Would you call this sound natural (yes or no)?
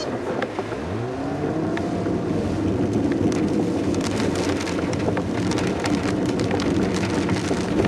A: yes